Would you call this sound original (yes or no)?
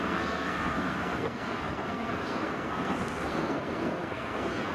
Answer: no